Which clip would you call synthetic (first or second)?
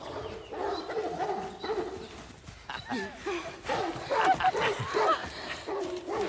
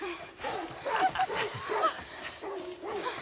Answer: second